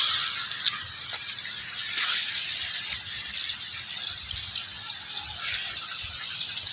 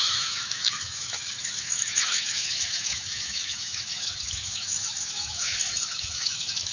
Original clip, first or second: first